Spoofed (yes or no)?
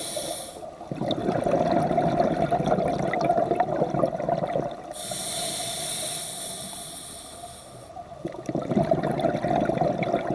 no